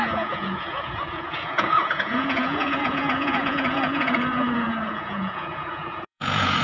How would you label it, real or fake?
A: fake